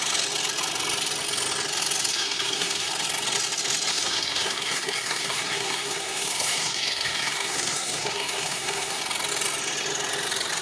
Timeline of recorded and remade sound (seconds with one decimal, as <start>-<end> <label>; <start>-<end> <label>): 0.0-2.1 recorded; 2.1-2.9 remade; 2.9-3.9 recorded; 3.9-9.0 remade; 9.0-10.6 recorded